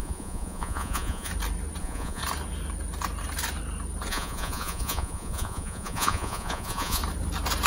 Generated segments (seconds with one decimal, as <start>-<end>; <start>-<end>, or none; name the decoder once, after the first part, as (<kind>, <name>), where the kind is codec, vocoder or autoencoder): 0.0-1.3 (vocoder, Vocos); 1.8-2.2; 4.1-7.0